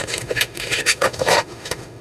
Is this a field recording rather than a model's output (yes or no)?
no